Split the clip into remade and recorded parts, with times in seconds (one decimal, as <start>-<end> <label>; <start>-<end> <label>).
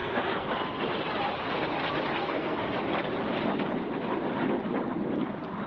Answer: 0.0-0.5 remade; 0.5-2.2 recorded; 2.2-2.7 remade; 2.7-5.7 recorded